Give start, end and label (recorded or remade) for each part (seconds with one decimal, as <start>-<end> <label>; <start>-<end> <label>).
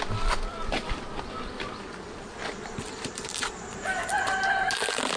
0.0-0.5 recorded; 0.5-3.6 remade; 3.6-5.2 recorded